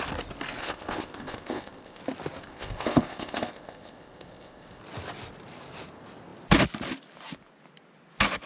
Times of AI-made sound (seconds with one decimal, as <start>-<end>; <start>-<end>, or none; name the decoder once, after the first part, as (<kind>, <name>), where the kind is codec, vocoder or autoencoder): 0.6-2.0 (codec, ZipCodec); 2.4-4.8